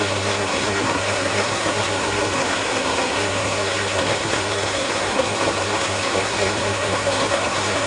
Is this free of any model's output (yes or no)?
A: no